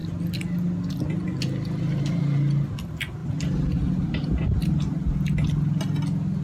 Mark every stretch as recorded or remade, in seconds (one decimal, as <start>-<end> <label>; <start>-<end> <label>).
0.0-6.4 recorded